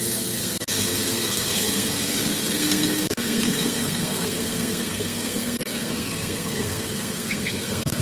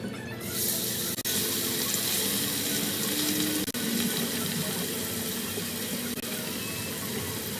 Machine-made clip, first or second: first